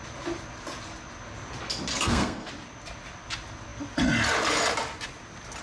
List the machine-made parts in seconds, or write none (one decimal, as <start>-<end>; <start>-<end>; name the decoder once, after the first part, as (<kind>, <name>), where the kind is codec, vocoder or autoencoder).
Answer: 1.9-2.5 (codec, SNAC)